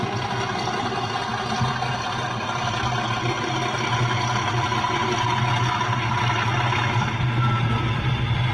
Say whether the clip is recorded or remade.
recorded